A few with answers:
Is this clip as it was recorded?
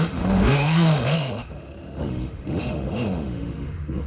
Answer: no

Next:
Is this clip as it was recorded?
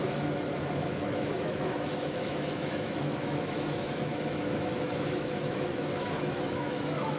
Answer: no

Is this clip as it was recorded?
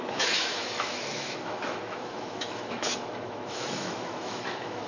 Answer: no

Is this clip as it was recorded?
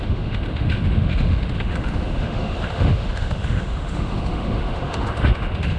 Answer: no